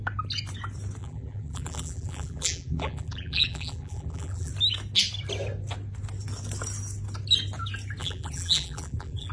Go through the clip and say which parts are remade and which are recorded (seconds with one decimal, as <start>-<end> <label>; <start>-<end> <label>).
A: 0.0-1.0 recorded; 1.0-4.5 remade; 4.5-8.0 recorded; 8.0-9.3 remade